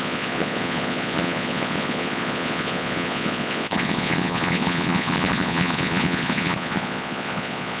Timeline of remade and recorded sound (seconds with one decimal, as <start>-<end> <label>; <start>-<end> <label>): 0.0-7.8 remade